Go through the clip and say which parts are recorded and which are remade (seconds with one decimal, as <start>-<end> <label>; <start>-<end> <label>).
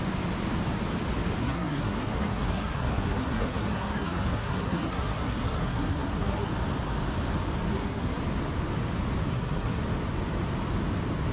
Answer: 0.0-1.4 recorded; 1.4-6.5 remade; 6.5-7.7 recorded; 7.7-8.2 remade; 8.2-9.3 recorded; 9.3-9.8 remade; 9.8-11.3 recorded